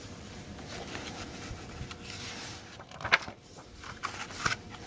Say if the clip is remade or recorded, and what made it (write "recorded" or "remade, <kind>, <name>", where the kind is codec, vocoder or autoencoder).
remade, vocoder, BigVGAN v2